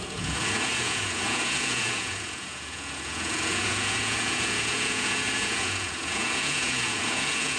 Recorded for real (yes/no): no